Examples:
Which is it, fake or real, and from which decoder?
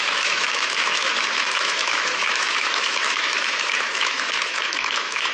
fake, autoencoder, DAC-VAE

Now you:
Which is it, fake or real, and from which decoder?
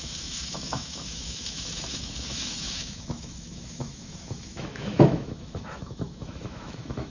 fake, autoencoder, DAC-VAE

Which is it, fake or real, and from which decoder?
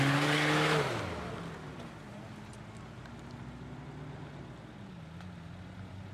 real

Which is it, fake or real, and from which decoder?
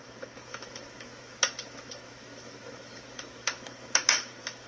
fake, autoencoder, DAC-VAE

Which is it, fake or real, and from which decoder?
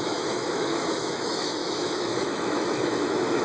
fake, autoencoder, DAC-VAE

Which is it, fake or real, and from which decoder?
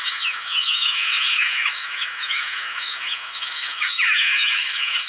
fake, autoencoder, DAC-VAE